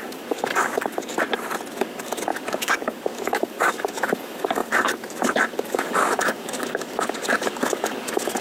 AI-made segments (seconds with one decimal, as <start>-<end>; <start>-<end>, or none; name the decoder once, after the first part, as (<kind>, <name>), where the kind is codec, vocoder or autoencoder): 0.0-1.1 (codec, DAC); 1.7-8.4